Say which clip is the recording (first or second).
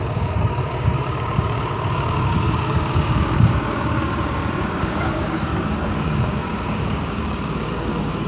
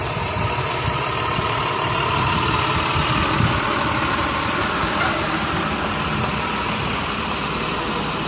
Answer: second